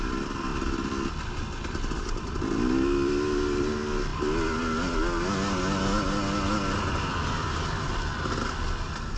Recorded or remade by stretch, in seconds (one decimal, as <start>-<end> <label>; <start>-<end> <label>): 0.0-9.2 recorded